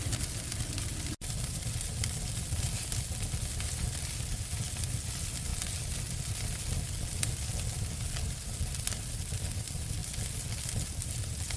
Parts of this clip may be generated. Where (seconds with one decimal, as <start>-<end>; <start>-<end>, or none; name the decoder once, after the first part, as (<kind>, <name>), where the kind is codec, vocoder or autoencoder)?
none